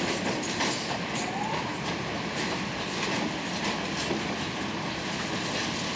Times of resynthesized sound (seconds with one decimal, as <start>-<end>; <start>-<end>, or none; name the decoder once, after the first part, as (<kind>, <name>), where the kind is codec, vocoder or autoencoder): none